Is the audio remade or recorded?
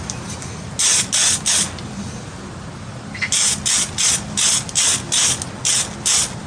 recorded